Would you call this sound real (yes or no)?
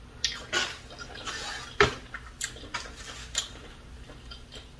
yes